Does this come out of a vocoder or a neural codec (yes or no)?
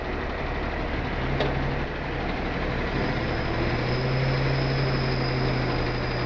no